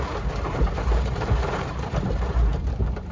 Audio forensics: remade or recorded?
remade